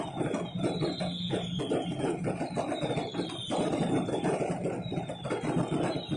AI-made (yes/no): no